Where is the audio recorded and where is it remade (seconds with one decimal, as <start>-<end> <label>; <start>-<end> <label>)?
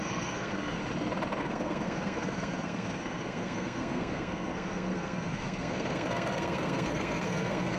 0.0-0.8 remade; 0.8-1.4 recorded; 1.4-7.8 remade